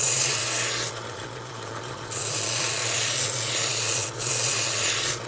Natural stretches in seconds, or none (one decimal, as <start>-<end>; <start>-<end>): 0.4-0.9